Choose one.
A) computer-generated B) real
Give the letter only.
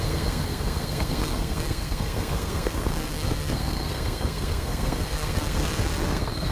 A